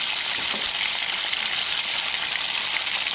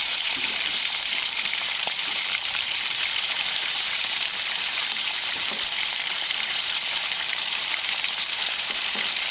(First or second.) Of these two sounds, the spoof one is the second